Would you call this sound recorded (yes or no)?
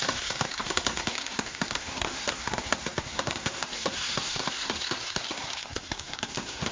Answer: no